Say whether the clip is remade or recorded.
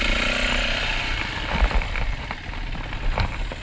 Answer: recorded